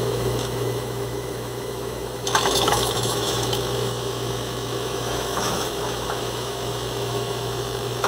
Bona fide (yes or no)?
no